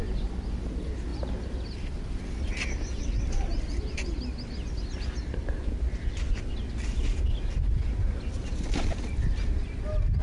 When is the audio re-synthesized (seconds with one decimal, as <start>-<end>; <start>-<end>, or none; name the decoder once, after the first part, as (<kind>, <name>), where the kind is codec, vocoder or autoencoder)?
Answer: none